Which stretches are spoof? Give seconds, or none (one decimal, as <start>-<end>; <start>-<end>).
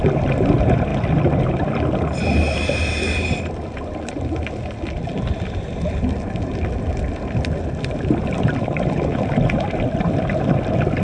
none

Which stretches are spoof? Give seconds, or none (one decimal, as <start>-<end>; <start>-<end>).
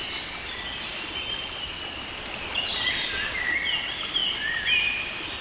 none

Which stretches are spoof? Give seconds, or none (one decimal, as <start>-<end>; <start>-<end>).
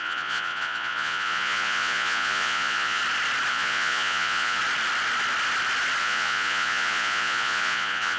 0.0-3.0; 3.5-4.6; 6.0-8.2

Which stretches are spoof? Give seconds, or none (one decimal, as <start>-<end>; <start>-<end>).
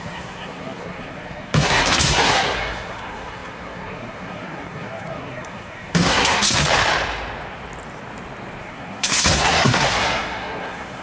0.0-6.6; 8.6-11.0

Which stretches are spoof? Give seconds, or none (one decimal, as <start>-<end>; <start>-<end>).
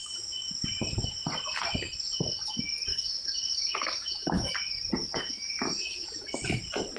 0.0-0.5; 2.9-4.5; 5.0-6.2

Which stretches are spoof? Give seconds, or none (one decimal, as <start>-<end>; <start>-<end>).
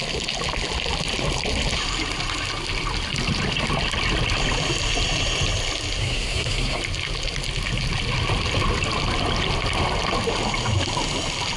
6.0-6.8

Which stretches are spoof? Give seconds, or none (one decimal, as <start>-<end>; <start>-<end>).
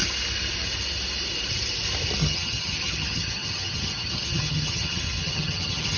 2.2-6.0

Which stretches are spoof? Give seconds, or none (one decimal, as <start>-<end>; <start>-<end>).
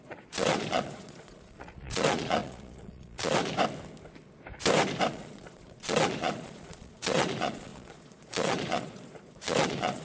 0.0-3.5; 5.1-10.0